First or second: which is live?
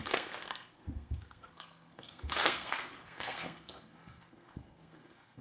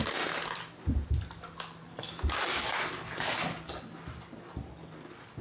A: second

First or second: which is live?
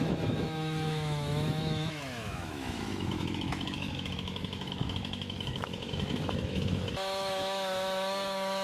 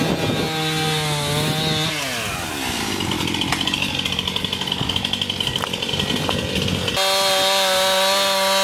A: second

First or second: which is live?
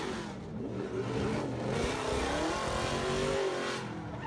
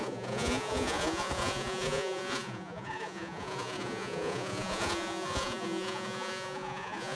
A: first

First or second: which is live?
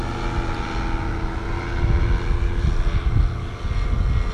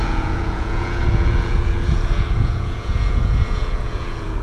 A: first